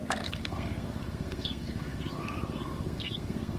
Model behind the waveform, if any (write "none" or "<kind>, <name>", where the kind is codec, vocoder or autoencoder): codec, SNAC